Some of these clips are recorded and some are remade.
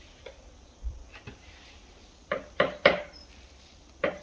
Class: remade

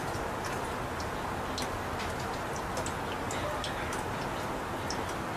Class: recorded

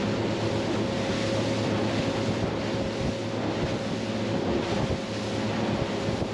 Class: recorded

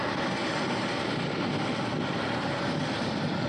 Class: recorded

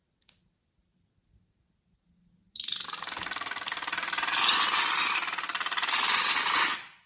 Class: recorded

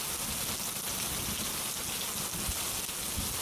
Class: recorded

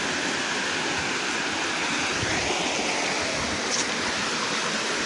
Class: recorded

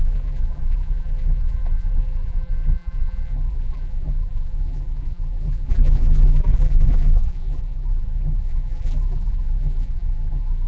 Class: remade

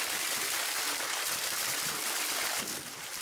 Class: recorded